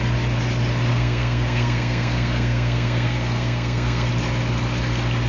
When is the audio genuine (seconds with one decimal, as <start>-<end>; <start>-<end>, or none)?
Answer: 0.0-0.9; 4.1-5.3

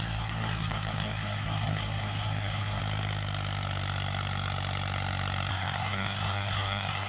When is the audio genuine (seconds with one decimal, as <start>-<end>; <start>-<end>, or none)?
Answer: 2.8-5.5

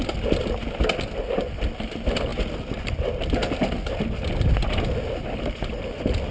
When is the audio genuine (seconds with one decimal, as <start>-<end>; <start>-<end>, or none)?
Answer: 0.0-6.3

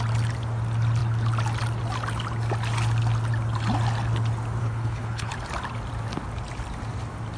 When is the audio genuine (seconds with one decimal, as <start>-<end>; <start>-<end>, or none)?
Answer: 0.0-4.6; 5.3-7.4

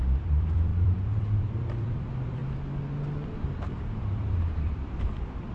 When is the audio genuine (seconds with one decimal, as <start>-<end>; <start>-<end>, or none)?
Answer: 2.4-3.4

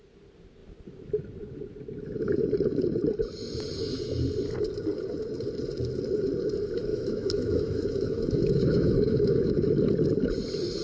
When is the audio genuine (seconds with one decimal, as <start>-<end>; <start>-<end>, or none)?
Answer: 0.0-6.9; 9.5-10.8

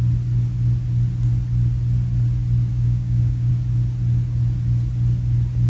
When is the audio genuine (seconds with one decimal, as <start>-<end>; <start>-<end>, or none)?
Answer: 0.0-2.7; 3.5-5.7